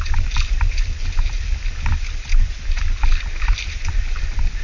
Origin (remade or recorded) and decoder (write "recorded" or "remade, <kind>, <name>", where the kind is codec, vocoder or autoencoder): recorded